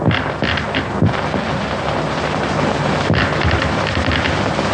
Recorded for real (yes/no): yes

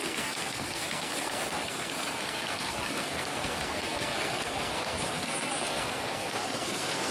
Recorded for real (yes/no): no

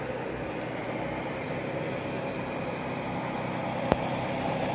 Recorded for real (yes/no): yes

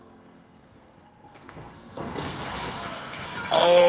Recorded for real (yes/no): no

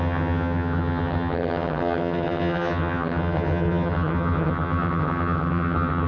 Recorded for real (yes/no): no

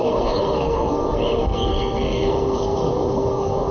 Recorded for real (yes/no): no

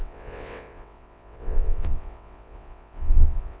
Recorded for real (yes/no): no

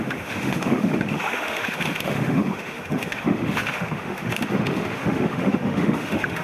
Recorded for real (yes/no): no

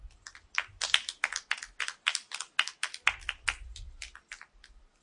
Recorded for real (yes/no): yes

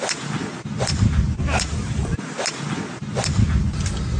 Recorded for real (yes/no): yes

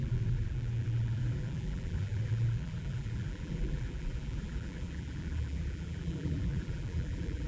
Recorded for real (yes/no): no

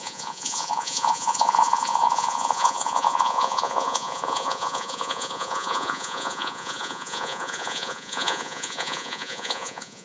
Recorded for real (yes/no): no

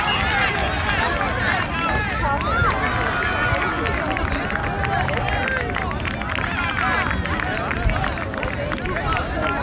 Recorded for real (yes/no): yes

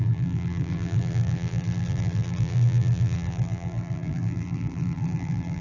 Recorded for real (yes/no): no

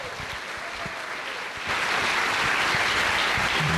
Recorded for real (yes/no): yes